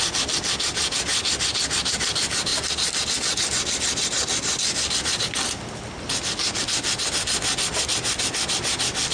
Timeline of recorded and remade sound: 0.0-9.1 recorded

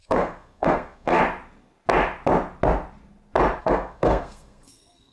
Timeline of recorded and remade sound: 0.0-1.2 remade; 1.2-3.6 recorded; 3.6-5.1 remade

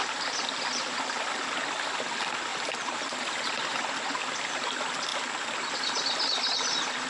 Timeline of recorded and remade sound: 0.0-7.1 recorded

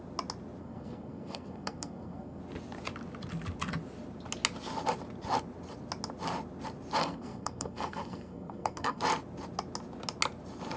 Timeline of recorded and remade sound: 0.0-0.6 recorded; 0.6-2.4 remade; 2.4-7.0 recorded; 7.0-9.0 remade; 9.0-10.8 recorded